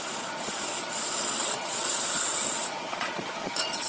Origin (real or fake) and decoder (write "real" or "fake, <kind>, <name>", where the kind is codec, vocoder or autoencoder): fake, vocoder, Vocos